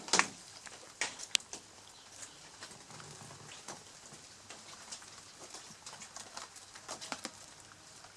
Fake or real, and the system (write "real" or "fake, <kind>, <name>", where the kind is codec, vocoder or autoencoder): real